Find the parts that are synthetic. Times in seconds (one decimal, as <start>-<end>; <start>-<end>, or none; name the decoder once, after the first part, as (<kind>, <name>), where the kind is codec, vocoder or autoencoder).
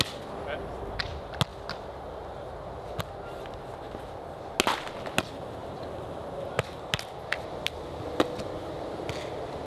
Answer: none